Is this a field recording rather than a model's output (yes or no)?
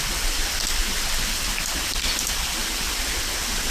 yes